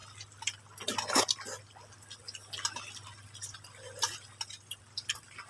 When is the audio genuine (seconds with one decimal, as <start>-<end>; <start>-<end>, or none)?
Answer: 0.0-5.5